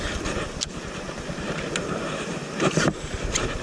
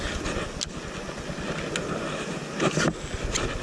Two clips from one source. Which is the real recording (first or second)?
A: second